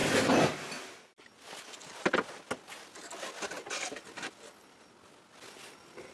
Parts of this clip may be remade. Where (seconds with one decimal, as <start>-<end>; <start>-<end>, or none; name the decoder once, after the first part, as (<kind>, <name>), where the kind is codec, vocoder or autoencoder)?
none